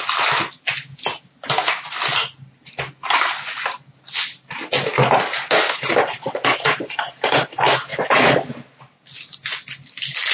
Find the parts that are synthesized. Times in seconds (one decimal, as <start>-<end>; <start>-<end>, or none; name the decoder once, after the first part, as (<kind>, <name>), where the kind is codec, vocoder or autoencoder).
none